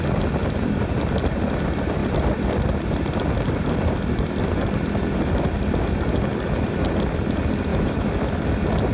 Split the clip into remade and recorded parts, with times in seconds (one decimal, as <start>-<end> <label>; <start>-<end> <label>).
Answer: 0.0-7.7 recorded; 7.7-8.3 remade; 8.3-8.9 recorded